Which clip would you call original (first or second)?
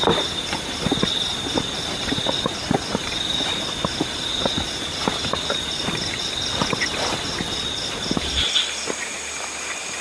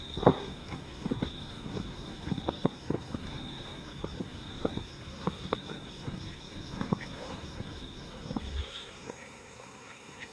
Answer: first